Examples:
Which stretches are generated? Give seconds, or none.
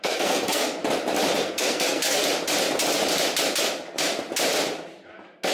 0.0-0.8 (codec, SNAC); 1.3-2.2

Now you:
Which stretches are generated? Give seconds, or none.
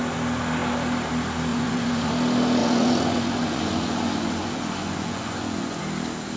1.5-2.1 (vocoder, Vocos); 2.6-5.8